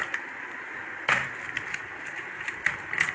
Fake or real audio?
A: real